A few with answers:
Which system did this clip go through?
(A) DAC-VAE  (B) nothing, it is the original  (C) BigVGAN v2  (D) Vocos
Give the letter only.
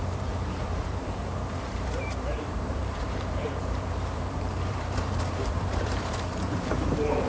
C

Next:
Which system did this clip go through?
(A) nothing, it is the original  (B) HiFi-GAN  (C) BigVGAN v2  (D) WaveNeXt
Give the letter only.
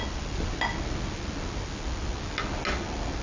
A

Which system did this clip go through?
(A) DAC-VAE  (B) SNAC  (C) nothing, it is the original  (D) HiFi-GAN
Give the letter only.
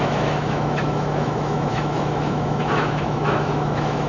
A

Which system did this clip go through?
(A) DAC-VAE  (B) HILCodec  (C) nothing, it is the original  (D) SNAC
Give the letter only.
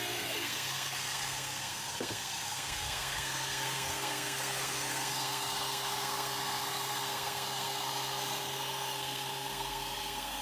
D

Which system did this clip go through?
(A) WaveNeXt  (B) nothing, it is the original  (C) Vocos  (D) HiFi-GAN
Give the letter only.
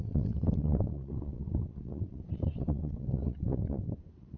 A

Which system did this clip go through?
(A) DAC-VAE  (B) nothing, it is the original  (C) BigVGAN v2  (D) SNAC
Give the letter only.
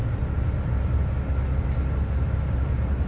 B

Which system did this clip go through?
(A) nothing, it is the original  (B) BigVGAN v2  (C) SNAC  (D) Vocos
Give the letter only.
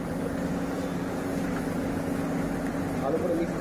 A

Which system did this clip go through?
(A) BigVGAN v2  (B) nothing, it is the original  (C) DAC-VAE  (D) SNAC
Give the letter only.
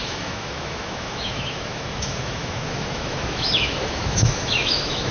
C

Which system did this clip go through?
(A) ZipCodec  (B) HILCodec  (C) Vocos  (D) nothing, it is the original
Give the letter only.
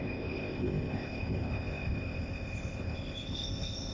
A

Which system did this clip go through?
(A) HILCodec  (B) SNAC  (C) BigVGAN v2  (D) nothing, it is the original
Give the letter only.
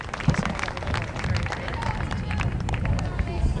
D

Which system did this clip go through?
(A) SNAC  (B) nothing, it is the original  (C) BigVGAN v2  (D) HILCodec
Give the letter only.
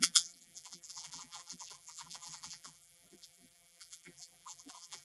C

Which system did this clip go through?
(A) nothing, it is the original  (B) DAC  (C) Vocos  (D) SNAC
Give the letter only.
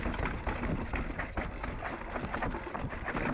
A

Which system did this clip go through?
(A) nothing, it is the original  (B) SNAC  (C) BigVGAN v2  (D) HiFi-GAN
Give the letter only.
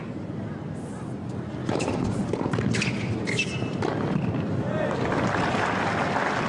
A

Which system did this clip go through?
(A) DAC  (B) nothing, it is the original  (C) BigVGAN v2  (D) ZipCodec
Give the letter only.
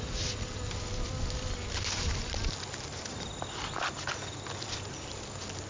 B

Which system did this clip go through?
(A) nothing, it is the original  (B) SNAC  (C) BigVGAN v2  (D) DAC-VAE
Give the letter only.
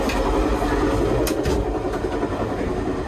A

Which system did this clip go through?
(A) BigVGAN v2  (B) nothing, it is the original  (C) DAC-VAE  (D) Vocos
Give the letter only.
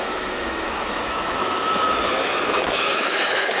C